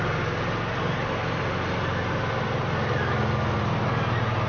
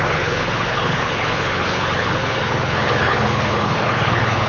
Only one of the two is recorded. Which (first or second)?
first